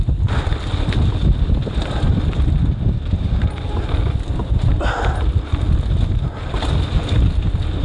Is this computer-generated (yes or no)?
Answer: no